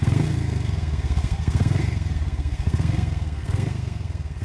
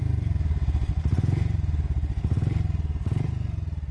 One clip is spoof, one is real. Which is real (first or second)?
second